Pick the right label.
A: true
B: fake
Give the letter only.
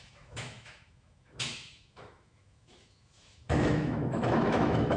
B